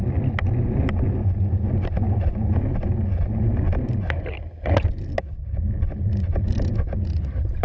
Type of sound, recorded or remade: recorded